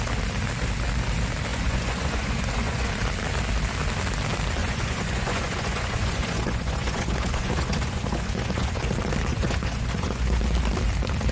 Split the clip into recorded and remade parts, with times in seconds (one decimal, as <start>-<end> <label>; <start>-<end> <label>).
0.0-1.5 recorded; 1.5-2.9 remade; 2.9-4.6 recorded; 4.6-8.9 remade; 8.9-9.3 recorded; 9.3-10.4 remade; 10.4-11.3 recorded